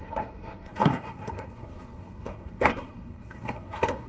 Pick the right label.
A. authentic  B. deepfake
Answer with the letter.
B